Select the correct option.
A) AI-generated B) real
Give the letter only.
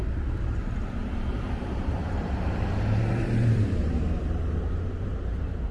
A